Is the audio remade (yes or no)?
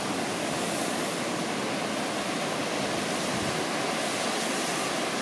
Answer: no